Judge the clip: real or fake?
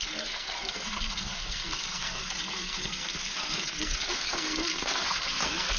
fake